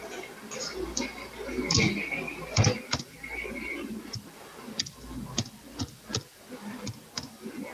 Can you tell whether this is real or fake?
fake